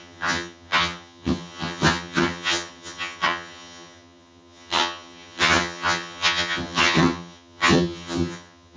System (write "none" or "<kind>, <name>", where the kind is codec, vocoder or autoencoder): vocoder, HiFi-GAN